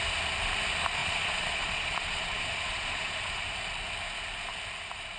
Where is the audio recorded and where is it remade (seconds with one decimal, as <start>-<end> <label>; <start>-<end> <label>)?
0.0-1.0 recorded; 1.0-3.5 remade; 3.5-5.2 recorded